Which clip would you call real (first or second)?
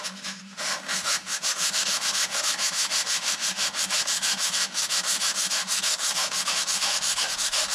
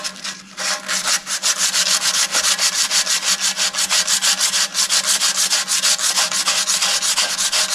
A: second